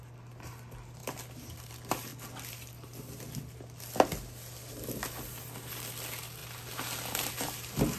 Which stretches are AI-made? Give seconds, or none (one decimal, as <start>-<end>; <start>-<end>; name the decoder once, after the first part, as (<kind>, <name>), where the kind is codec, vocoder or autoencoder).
none